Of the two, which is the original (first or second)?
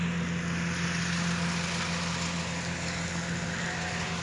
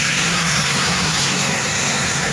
first